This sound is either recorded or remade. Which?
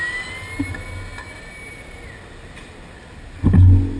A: recorded